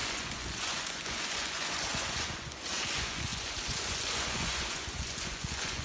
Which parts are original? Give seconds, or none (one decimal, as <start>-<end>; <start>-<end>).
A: none